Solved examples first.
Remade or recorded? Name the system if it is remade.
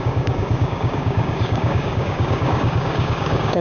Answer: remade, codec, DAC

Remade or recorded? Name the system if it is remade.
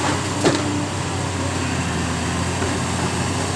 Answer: recorded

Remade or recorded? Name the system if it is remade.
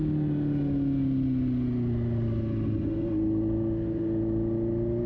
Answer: recorded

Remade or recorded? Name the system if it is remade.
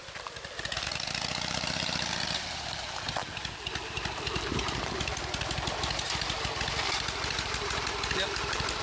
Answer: remade, vocoder, BigVGAN v2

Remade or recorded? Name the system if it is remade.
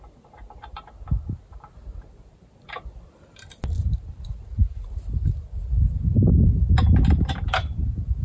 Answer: recorded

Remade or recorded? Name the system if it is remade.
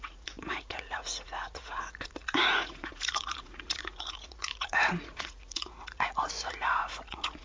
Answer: remade, vocoder, Vocos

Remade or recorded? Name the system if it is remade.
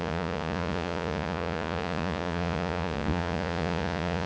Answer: remade, vocoder, Vocos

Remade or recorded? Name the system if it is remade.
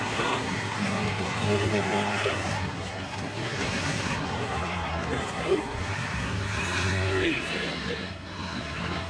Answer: remade, codec, SNAC